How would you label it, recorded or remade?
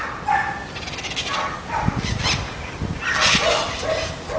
recorded